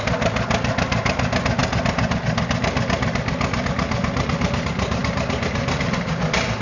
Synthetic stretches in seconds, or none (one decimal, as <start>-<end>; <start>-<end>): none